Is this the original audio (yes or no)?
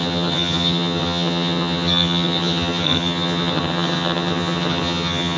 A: no